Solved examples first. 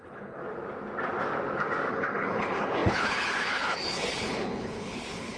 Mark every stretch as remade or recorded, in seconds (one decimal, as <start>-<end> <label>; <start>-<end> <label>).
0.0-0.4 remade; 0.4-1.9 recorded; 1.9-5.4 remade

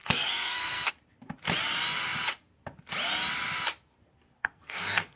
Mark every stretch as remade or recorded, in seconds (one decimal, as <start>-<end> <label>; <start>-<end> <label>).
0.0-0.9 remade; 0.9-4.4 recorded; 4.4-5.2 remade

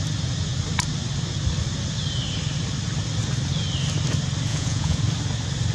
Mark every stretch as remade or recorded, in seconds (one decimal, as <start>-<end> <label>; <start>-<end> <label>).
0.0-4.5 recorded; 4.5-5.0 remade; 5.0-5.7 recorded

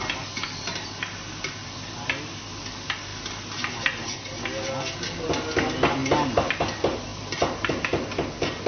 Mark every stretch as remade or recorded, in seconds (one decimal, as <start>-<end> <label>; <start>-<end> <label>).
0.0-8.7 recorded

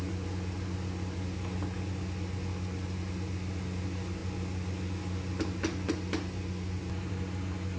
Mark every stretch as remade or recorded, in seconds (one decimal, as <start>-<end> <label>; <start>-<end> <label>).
0.0-7.8 recorded

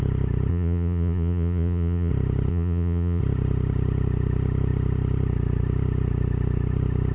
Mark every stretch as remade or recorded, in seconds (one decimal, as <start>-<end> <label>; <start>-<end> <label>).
0.0-0.5 recorded; 0.5-2.1 remade; 2.1-2.5 recorded; 2.5-3.2 remade; 3.2-7.1 recorded

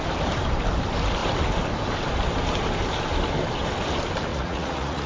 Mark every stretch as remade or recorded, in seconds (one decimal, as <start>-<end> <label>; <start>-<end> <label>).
0.0-4.3 recorded; 4.3-5.1 remade